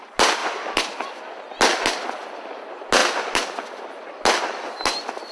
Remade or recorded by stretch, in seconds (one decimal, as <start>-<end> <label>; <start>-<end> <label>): 0.0-5.3 recorded